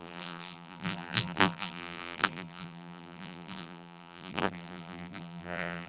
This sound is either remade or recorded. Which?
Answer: remade